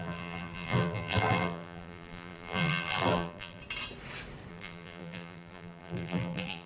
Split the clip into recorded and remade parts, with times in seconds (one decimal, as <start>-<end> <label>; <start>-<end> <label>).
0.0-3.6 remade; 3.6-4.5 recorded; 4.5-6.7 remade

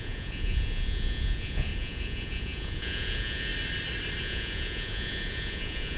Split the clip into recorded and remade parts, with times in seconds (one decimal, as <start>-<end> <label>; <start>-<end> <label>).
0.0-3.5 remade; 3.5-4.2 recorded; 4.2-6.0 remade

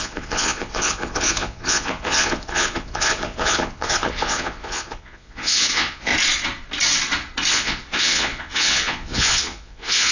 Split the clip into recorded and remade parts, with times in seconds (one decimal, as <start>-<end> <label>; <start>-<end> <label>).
0.0-6.1 remade; 6.1-7.5 recorded; 7.5-10.1 remade